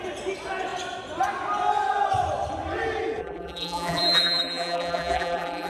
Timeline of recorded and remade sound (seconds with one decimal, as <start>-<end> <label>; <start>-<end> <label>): 0.0-3.2 recorded; 3.2-5.7 remade